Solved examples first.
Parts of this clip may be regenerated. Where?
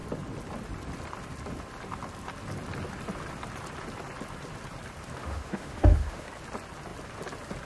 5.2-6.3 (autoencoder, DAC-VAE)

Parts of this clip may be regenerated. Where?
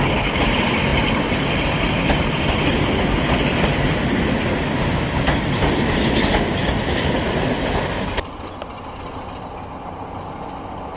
none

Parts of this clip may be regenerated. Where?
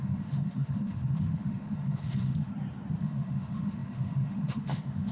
0.0-2.5 (autoencoder, DAC-VAE); 3.0-5.1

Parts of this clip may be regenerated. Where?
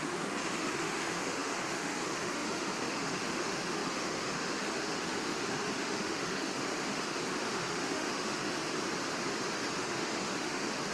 0.0-8.6 (autoencoder, DAC-VAE); 9.8-10.9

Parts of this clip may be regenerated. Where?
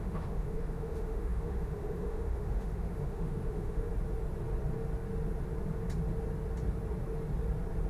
0.0-3.9 (autoencoder, DAC-VAE)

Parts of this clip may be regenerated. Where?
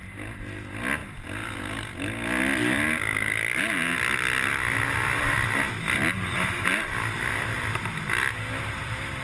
none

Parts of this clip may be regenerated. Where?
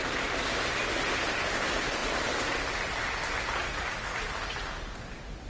none